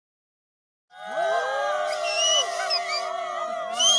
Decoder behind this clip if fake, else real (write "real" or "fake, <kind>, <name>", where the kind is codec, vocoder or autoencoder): real